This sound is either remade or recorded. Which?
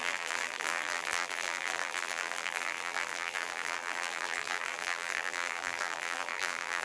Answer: remade